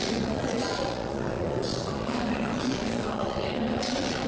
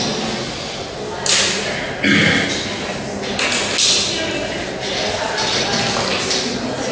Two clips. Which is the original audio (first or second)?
second